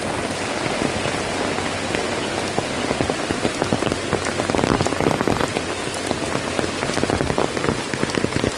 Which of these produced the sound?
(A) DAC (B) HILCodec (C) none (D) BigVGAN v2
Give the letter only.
C